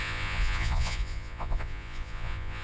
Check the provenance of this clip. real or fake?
fake